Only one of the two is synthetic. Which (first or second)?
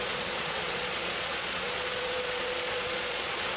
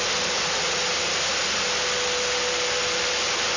first